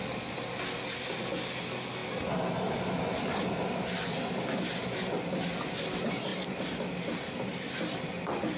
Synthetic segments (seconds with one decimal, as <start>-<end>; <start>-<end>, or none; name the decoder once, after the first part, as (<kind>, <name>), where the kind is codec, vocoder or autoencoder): none